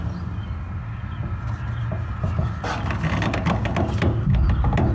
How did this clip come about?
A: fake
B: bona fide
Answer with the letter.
B